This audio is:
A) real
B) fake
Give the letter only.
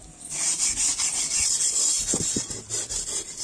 A